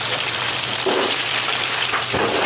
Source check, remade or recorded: recorded